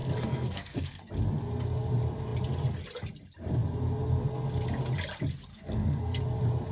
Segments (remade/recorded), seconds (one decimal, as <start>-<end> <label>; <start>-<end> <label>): 0.0-1.1 remade; 1.1-5.5 recorded; 5.5-6.2 remade; 6.2-6.7 recorded